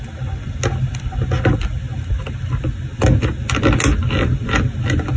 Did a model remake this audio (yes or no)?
no